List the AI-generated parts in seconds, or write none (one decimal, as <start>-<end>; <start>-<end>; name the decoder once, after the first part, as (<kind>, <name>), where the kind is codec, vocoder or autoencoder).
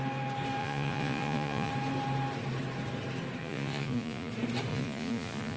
0.6-1.7 (vocoder, Vocos); 3.4-4.3; 4.7-5.6